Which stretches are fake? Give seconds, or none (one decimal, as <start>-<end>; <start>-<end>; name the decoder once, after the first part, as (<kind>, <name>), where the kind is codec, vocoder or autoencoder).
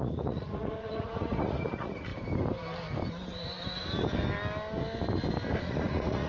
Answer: 0.0-2.1 (vocoder, Vocos); 5.6-6.3